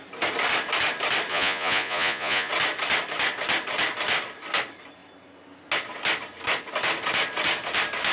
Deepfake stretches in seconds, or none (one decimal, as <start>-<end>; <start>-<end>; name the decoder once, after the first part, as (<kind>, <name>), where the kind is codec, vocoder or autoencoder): 1.3-2.5 (vocoder, Vocos)

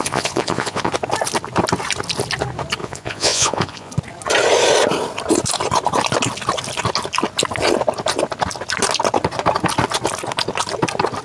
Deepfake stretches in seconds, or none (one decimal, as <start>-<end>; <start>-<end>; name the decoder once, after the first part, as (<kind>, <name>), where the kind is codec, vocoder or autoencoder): 0.0-0.9 (vocoder, Vocos); 2.8-3.9

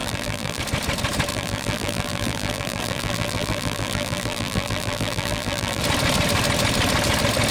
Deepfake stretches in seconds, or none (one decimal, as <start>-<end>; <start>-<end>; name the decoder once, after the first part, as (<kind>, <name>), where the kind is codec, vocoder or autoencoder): 0.0-0.6 (vocoder, BigVGAN v2); 1.3-5.8

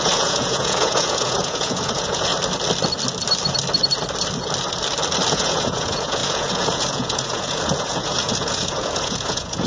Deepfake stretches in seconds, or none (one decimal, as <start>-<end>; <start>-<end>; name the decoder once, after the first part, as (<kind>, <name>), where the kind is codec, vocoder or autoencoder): 0.0-2.3 (vocoder, Vocos); 5.3-9.7